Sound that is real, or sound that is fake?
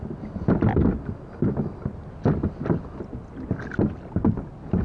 real